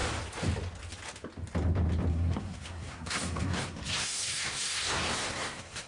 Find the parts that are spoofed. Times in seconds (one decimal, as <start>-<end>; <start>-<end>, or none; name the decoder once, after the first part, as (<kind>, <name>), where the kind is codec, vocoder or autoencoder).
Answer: 2.1-5.9 (codec, SNAC)